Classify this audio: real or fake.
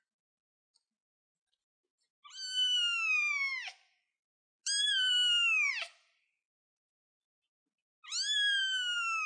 real